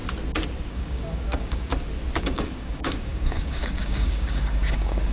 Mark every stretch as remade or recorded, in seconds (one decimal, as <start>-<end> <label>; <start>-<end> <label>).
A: 0.0-0.7 recorded; 0.7-1.7 remade; 1.7-2.2 recorded; 2.2-5.1 remade

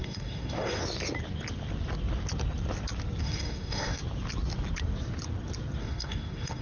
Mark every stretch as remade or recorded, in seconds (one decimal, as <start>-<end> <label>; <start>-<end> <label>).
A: 0.0-0.8 remade; 0.8-3.2 recorded; 3.2-4.0 remade; 4.0-5.8 recorded; 5.8-6.6 remade

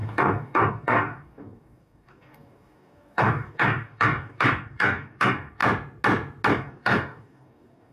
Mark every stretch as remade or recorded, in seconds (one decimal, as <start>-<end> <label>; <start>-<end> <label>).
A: 0.0-5.6 remade; 5.6-6.5 recorded; 6.5-7.9 remade

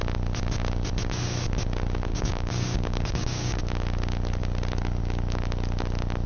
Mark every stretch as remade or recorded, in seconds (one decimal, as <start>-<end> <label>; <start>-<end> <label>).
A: 0.0-2.1 recorded; 2.1-3.6 remade; 3.6-6.3 recorded

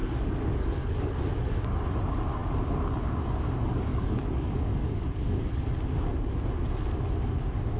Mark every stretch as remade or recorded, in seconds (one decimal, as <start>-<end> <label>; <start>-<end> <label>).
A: 0.0-1.1 remade; 1.1-3.9 recorded; 3.9-5.6 remade; 5.6-7.8 recorded

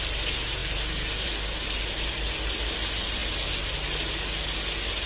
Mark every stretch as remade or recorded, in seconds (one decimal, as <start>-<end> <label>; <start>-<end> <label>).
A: 0.0-5.1 recorded

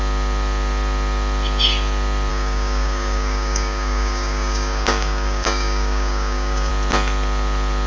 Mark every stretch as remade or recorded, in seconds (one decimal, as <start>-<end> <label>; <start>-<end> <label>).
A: 0.0-2.3 recorded; 2.3-6.7 remade; 6.7-7.9 recorded

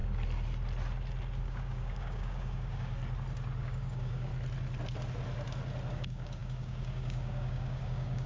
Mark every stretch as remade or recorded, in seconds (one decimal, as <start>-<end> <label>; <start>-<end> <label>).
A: 0.0-1.4 recorded; 1.4-3.0 remade; 3.0-3.6 recorded; 3.6-4.3 remade; 4.3-5.9 recorded; 5.9-8.3 remade